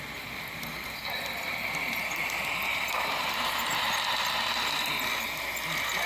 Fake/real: real